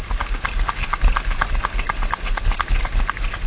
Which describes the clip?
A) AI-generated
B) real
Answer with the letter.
B